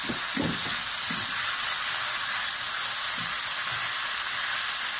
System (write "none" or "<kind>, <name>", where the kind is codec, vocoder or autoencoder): none